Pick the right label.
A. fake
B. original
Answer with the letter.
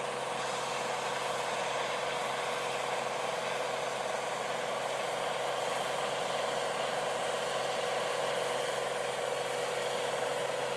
B